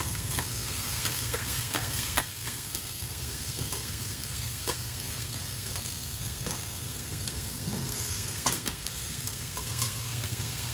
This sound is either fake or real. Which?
fake